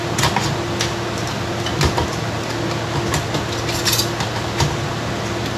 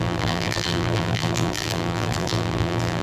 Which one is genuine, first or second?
first